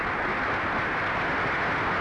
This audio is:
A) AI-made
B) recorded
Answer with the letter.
B